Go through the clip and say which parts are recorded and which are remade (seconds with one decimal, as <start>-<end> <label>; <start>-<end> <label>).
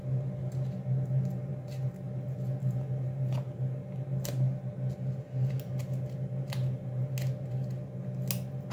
0.0-8.7 recorded